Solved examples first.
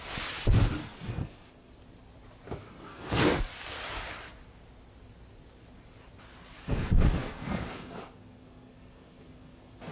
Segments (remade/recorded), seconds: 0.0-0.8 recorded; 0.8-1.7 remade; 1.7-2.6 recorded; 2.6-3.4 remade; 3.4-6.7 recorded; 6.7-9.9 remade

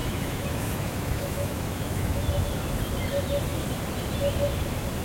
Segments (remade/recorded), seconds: 0.0-2.2 remade; 2.2-5.0 recorded

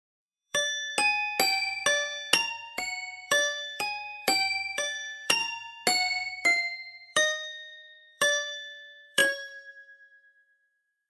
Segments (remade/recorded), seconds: 0.0-0.9 remade; 0.9-2.5 recorded; 2.5-5.4 remade; 5.4-6.3 recorded; 6.3-11.1 remade

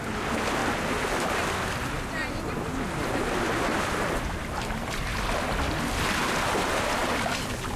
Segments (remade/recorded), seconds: 0.0-7.8 recorded

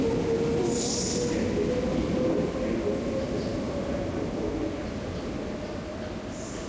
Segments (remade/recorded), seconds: 0.0-6.7 recorded

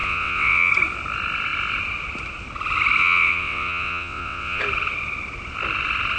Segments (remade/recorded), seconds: 0.0-0.7 remade; 0.7-3.0 recorded; 3.0-4.6 remade; 4.6-6.2 recorded